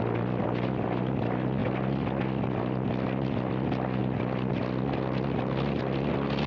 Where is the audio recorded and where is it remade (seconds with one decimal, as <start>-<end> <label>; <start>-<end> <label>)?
0.0-6.5 recorded